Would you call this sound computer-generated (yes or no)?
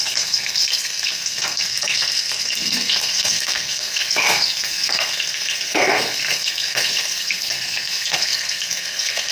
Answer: yes